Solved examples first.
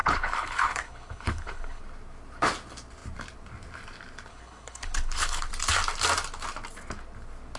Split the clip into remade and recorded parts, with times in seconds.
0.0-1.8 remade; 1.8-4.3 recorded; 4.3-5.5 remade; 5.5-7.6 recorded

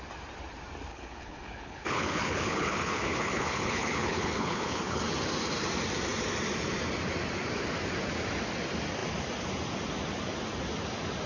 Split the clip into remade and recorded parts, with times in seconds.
0.0-0.9 recorded; 0.9-5.0 remade; 5.0-11.3 recorded

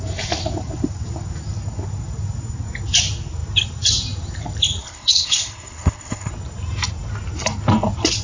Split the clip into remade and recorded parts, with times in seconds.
0.0-4.8 recorded; 4.8-6.3 remade; 6.3-8.2 recorded